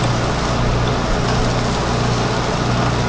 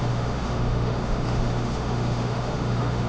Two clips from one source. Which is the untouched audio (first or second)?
first